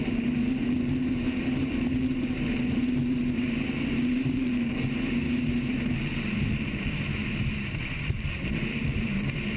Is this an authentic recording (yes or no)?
no